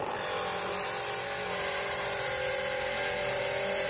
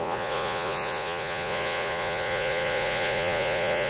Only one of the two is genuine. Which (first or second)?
first